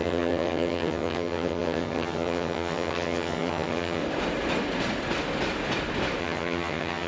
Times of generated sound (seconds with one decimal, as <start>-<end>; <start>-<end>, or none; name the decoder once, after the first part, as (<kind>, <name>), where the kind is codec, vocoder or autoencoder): 0.0-4.0 (vocoder, HiFi-GAN); 6.2-7.1